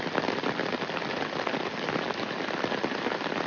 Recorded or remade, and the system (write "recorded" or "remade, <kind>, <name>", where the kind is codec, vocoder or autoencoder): remade, vocoder, BigVGAN v2